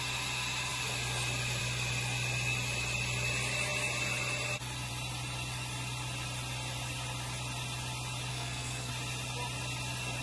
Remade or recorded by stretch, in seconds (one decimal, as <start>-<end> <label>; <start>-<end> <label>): 0.0-8.3 recorded; 8.3-8.9 remade; 8.9-10.2 recorded

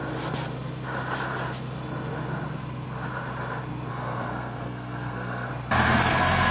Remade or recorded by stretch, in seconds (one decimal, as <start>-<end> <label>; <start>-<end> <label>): 0.0-3.9 recorded; 3.9-5.5 remade; 5.5-6.0 recorded; 6.0-6.5 remade

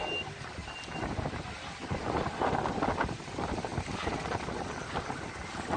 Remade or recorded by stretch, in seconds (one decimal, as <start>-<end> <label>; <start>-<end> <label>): 0.0-5.8 recorded

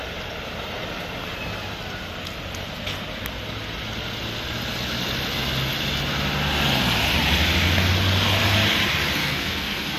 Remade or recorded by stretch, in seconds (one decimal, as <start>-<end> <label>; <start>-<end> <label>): 0.0-9.2 recorded; 9.2-10.0 remade

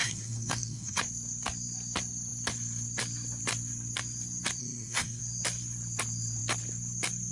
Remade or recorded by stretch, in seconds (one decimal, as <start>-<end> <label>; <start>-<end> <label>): 0.0-1.0 remade; 1.0-4.6 recorded; 4.6-5.2 remade; 5.2-7.3 recorded

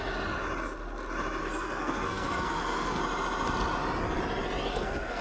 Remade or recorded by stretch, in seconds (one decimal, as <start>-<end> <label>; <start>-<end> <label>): 0.0-1.4 recorded; 1.4-3.0 remade; 3.0-4.7 recorded; 4.7-5.2 remade

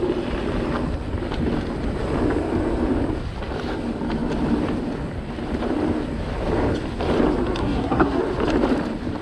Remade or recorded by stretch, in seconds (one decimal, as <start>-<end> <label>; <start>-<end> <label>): 0.0-7.6 recorded; 7.6-8.2 remade; 8.2-9.2 recorded